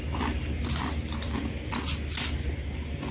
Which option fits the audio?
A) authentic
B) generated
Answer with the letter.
A